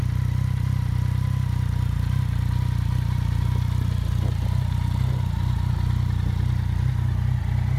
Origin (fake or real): real